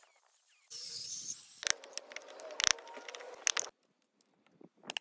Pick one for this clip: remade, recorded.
recorded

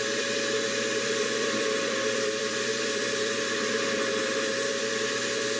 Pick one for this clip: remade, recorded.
remade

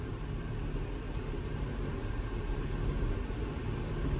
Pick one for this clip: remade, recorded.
remade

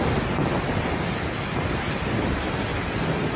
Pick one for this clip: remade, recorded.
recorded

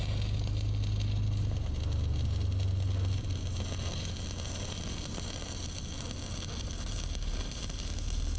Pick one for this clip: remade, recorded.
recorded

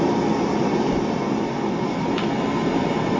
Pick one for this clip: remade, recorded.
remade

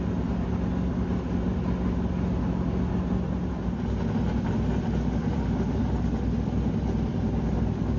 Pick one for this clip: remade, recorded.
recorded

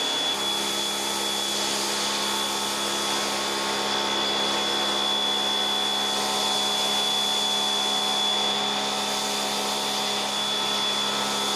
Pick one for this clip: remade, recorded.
recorded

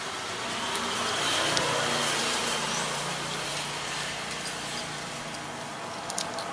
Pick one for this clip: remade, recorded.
recorded